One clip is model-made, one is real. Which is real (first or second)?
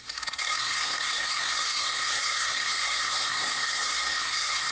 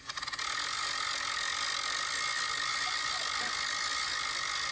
second